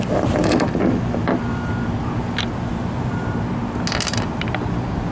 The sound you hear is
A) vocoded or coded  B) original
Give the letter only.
B